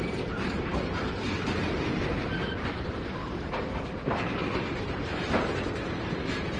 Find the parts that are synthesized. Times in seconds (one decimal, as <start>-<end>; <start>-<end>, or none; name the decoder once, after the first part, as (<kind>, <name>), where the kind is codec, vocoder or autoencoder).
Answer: 0.0-0.7 (vocoder, BigVGAN v2); 1.7-6.6